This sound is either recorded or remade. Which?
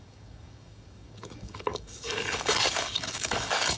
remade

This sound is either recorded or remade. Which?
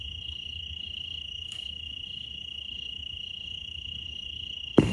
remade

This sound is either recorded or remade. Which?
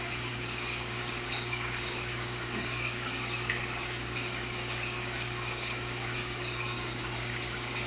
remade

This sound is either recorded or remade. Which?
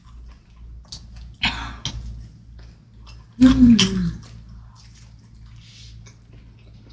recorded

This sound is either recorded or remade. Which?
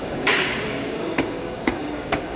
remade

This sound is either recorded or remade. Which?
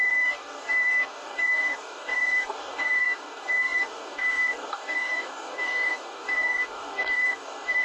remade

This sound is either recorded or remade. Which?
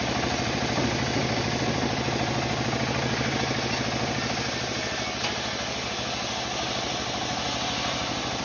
recorded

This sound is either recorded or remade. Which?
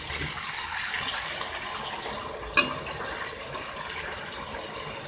recorded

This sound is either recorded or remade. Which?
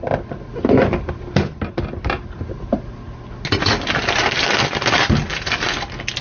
recorded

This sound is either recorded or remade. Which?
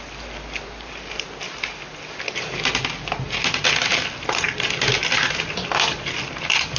recorded